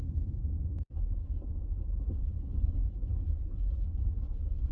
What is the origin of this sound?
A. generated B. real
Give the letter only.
B